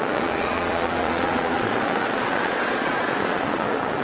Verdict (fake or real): fake